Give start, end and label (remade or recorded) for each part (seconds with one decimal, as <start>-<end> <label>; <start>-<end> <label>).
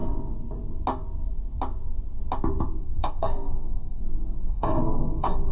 0.0-2.8 recorded; 2.8-4.0 remade; 4.0-4.5 recorded; 4.5-5.5 remade